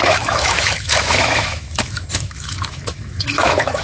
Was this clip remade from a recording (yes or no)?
yes